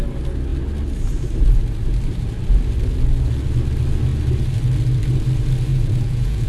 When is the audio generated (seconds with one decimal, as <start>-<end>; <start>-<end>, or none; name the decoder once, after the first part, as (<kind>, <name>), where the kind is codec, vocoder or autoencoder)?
5.7-6.5 (vocoder, Vocos)